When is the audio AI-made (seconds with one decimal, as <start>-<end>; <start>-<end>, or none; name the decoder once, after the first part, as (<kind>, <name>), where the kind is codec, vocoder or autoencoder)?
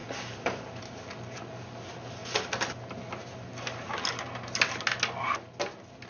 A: 0.0-0.8 (vocoder, BigVGAN v2)